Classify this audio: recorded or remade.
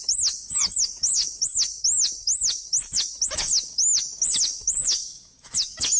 remade